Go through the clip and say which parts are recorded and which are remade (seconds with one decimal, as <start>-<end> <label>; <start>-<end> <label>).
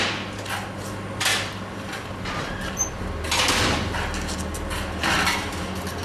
0.0-1.3 recorded; 1.3-3.0 remade; 3.0-6.0 recorded